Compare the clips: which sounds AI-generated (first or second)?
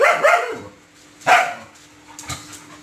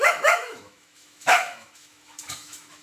second